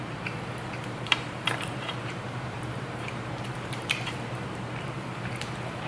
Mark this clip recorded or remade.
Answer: remade